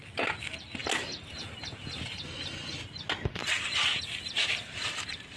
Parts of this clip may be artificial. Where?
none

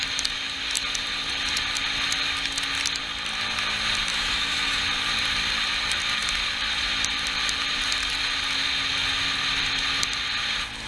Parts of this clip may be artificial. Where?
4.1-4.8 (autoencoder, DAC-VAE)

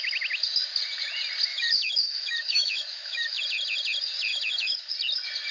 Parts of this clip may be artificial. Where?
1.5-3.4 (autoencoder, DAC-VAE); 4.3-4.9

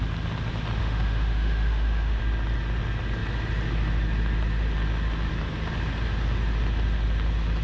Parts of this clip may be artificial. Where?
0.8-2.2 (autoencoder, DAC-VAE)

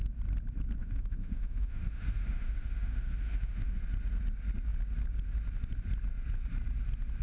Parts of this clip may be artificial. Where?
0.8-3.8 (autoencoder, DAC-VAE)

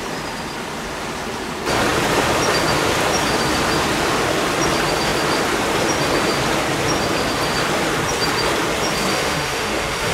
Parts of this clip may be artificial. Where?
9.1-10.1 (autoencoder, DAC-VAE)

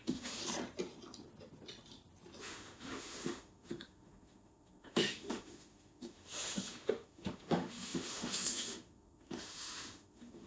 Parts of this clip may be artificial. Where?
0.0-0.4 (autoencoder, DAC-VAE); 2.4-10.5

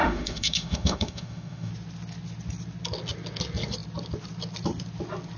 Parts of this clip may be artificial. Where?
0.0-1.7 (autoencoder, DAC-VAE)